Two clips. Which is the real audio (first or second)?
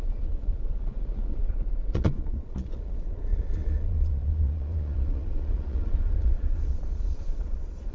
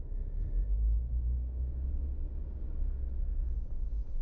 second